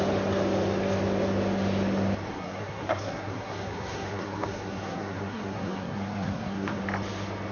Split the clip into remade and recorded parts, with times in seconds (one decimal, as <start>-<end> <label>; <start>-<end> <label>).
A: 0.0-2.3 recorded; 2.3-6.8 remade; 6.8-7.5 recorded